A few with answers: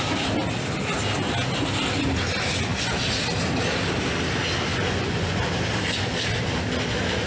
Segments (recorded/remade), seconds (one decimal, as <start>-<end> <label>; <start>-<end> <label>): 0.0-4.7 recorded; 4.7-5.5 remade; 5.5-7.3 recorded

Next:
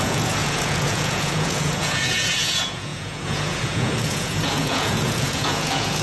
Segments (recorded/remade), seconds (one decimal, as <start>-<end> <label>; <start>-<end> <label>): 0.0-6.0 remade

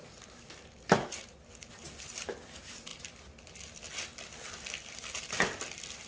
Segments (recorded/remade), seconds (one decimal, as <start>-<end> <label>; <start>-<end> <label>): 0.0-6.1 recorded

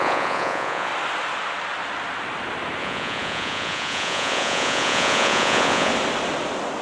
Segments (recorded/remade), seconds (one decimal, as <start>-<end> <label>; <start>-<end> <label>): 0.0-0.9 remade; 0.9-2.8 recorded; 2.8-5.9 remade; 5.9-6.8 recorded